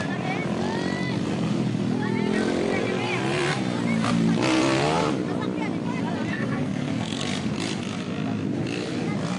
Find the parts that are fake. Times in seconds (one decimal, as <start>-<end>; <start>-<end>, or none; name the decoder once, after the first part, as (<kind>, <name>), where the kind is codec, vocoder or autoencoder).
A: 6.3-7.5 (codec, SNAC)